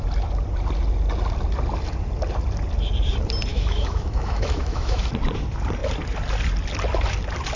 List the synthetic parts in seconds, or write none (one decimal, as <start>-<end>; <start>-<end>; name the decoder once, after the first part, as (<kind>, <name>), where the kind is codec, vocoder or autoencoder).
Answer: 3.5-5.1 (autoencoder, DAC-VAE)